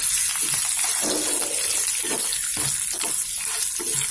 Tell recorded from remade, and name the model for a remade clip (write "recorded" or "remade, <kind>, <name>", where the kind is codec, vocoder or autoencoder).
recorded